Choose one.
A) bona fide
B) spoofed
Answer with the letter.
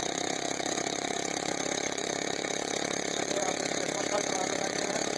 B